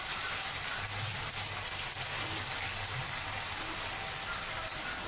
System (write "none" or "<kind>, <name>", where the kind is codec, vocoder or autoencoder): none